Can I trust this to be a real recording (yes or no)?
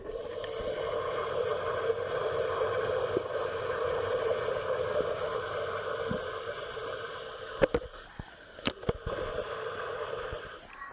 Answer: yes